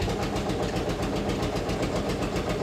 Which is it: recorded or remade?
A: recorded